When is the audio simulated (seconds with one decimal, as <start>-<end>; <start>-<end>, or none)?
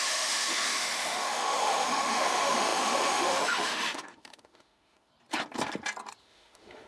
0.0-5.1; 6.2-6.9